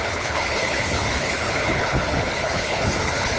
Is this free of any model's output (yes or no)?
no